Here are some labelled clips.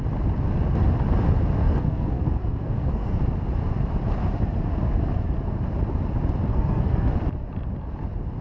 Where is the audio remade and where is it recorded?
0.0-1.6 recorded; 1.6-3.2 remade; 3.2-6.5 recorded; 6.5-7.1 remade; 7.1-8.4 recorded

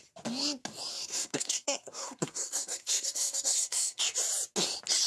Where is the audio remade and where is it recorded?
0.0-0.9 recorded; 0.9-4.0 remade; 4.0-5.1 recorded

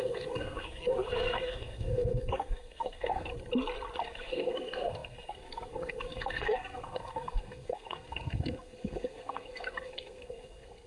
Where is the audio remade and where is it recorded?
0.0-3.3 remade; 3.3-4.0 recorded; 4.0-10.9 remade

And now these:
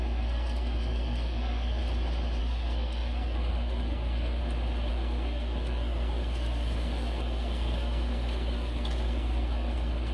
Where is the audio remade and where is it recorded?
0.0-1.8 remade; 1.8-2.4 recorded; 2.4-4.4 remade; 4.4-4.9 recorded; 4.9-10.1 remade